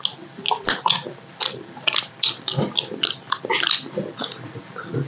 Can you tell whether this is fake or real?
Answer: real